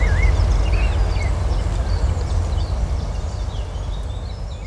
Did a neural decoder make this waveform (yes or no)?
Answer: no